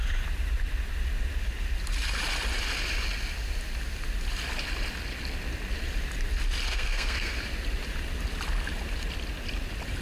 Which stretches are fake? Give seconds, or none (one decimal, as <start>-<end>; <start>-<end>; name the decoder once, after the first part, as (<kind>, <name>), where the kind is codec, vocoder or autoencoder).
6.7-7.4 (codec, SNAC)